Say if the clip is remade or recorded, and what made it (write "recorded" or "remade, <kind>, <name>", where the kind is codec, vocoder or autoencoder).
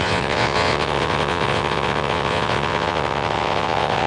remade, vocoder, WaveNeXt